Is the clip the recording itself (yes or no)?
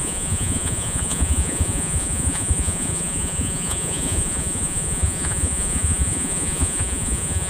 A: no